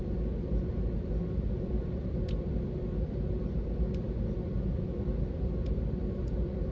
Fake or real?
fake